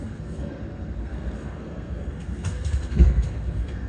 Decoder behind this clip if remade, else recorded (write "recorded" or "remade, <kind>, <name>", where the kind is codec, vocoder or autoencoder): remade, codec, SNAC